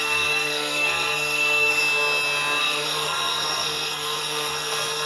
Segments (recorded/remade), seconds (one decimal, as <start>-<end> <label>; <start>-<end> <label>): 0.0-1.8 remade; 1.8-2.6 recorded; 2.6-5.1 remade